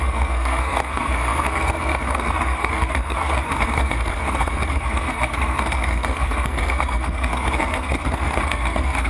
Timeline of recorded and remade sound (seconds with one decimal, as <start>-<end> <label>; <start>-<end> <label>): 0.0-9.1 remade